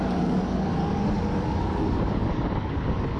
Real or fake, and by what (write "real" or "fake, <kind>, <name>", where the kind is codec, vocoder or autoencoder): fake, codec, DAC